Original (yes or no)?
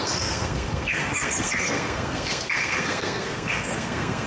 no